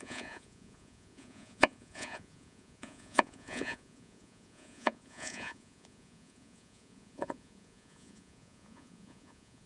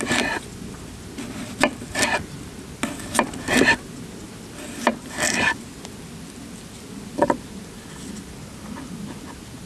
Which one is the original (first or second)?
second